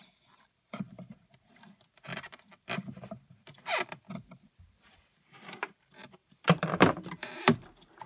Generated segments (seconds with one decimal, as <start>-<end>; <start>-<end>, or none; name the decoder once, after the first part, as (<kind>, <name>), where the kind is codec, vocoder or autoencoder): 0.0-8.1 (vocoder, BigVGAN v2)